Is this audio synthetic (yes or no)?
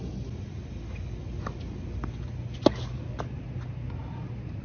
no